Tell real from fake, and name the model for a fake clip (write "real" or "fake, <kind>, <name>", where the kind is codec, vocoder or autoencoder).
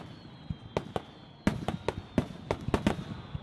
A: real